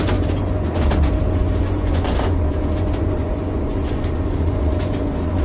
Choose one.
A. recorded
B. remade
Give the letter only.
B